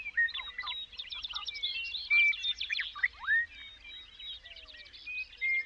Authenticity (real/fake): real